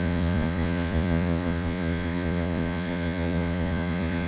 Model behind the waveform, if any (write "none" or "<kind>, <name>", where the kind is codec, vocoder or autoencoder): vocoder, Vocos